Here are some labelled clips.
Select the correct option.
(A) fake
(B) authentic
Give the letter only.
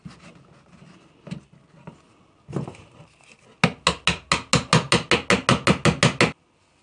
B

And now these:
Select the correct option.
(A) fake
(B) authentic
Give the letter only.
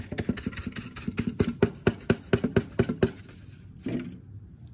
B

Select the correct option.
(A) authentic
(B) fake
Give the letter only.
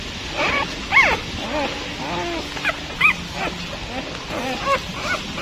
A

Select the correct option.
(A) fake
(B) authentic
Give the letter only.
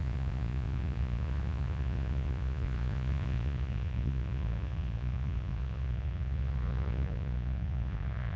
A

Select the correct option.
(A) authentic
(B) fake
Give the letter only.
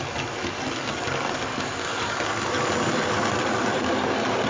A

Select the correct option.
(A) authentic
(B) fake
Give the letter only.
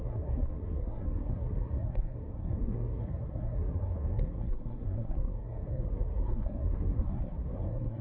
B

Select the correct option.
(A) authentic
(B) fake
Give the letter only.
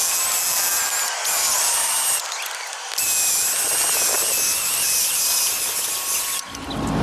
A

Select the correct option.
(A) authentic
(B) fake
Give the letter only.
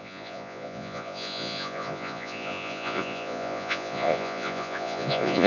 B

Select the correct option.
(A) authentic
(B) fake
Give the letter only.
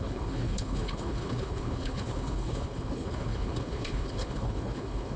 B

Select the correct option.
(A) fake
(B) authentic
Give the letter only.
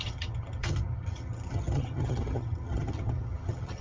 A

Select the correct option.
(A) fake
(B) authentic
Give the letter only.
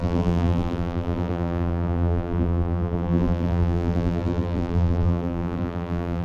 A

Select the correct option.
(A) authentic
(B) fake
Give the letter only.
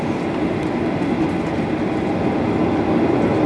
A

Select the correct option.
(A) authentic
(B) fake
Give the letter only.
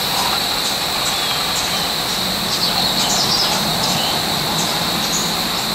A